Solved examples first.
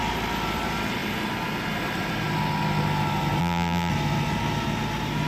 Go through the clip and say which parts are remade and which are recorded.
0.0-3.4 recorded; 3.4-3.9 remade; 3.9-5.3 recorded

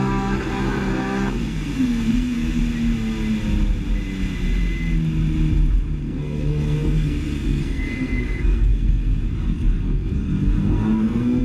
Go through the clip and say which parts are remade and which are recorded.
0.0-2.6 remade; 2.6-6.0 recorded; 6.0-11.4 remade

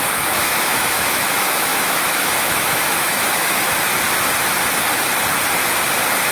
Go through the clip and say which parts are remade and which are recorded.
0.0-3.9 remade; 3.9-6.3 recorded

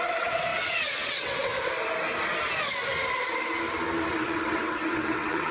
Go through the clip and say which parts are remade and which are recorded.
0.0-1.5 remade; 1.5-4.1 recorded; 4.1-5.5 remade